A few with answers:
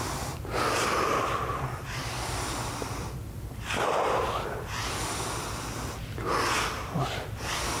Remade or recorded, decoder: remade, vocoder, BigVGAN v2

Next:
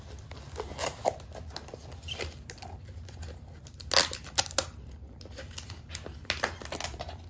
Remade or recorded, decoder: recorded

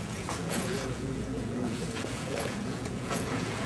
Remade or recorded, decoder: remade, vocoder, Vocos